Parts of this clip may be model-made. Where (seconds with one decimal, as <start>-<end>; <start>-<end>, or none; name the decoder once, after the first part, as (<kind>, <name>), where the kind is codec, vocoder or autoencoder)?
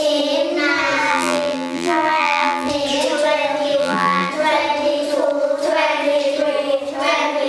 1.1-2.7 (vocoder, BigVGAN v2); 3.8-4.3